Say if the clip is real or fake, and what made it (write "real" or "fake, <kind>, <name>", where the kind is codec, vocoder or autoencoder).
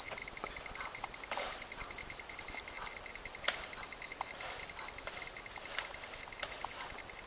real